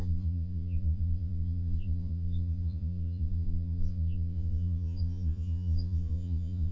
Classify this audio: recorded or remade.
remade